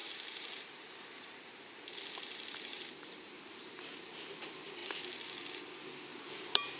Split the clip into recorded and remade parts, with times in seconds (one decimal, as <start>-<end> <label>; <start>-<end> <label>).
0.0-4.1 remade; 4.1-6.1 recorded; 6.1-6.8 remade